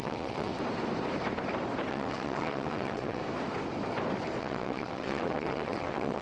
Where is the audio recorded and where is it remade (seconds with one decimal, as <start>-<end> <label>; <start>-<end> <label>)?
0.0-0.5 remade; 0.5-1.9 recorded; 1.9-3.2 remade; 3.2-4.4 recorded; 4.4-6.2 remade